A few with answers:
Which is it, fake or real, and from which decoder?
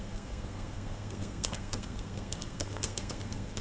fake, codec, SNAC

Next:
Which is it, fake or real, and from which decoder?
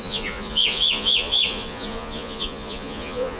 fake, vocoder, Vocos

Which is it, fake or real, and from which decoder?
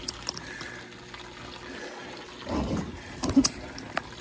real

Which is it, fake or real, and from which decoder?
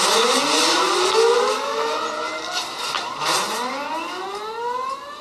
real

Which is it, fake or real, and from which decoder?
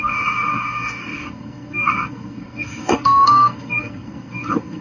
fake, codec, SNAC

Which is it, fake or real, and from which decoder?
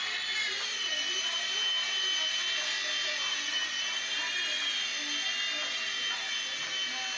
real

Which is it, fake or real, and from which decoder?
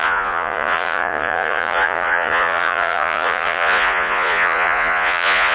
fake, vocoder, Vocos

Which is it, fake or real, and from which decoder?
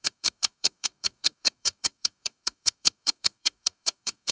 fake, codec, DAC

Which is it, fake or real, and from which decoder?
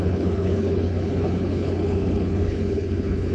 fake, codec, HILCodec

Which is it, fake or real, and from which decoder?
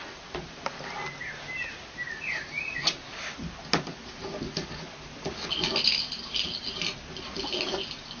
real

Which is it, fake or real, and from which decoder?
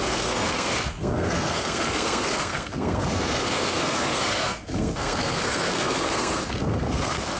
fake, codec, SNAC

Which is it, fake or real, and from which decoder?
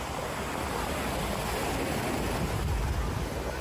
real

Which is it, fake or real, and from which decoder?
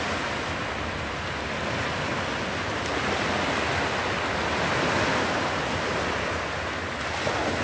real